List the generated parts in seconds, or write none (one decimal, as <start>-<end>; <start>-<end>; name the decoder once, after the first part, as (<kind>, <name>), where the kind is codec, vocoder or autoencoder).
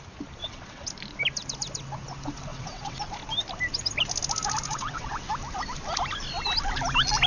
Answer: 0.4-0.9 (vocoder, WaveNeXt); 2.5-3.0; 4.7-5.3